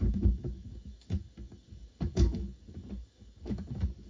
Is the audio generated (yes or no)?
yes